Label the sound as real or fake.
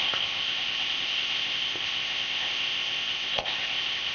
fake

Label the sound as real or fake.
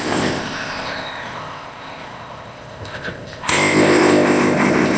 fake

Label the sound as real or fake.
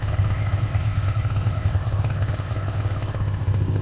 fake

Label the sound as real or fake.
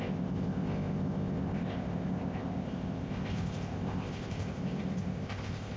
fake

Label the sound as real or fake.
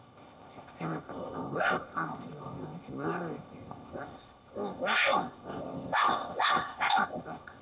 fake